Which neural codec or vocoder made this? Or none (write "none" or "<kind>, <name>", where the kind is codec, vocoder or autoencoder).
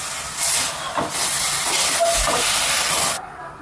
none